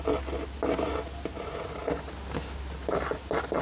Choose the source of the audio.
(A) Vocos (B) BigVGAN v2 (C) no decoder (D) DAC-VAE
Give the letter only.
C